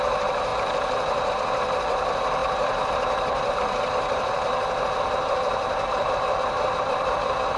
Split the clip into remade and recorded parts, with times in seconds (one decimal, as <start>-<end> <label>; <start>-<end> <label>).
0.0-0.5 remade; 0.5-1.3 recorded; 1.3-7.6 remade